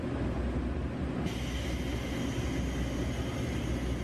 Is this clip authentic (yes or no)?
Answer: yes